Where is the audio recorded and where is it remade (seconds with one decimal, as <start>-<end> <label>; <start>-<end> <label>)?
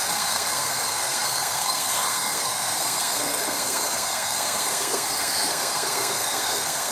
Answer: 0.0-6.9 remade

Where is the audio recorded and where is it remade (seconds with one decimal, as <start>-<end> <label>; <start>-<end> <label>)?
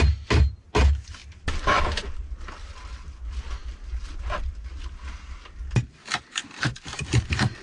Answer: 0.0-7.6 recorded